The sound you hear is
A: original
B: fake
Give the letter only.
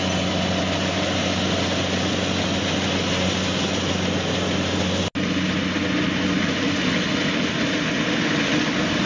A